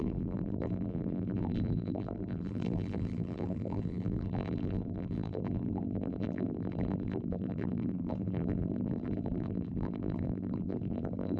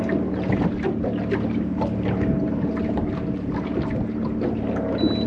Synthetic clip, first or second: first